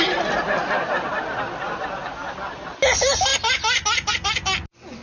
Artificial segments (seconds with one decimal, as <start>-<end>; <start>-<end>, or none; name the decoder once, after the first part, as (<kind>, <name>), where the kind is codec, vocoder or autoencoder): none